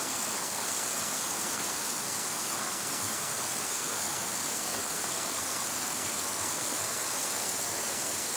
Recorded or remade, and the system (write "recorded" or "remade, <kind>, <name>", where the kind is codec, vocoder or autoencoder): remade, codec, SNAC